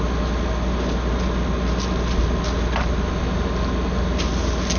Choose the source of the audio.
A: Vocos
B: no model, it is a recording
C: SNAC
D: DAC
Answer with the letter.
B